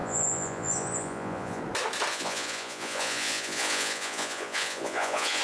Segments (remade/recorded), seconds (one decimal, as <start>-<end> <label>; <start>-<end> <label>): 0.0-1.6 remade; 1.6-2.1 recorded; 2.1-5.4 remade